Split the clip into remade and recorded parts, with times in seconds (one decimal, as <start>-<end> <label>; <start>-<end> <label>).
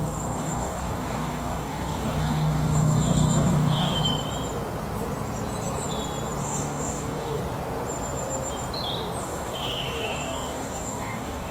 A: 0.0-4.0 remade; 4.0-6.4 recorded; 6.4-7.4 remade; 7.4-9.2 recorded; 9.2-11.5 remade